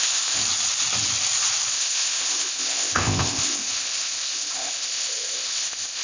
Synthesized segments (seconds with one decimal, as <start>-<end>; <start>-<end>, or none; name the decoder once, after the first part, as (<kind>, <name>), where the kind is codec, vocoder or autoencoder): 0.0-0.4 (codec, ZipCodec); 1.7-6.0